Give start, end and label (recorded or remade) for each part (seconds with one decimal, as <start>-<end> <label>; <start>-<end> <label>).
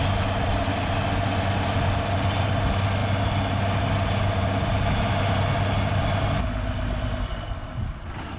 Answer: 0.0-8.4 recorded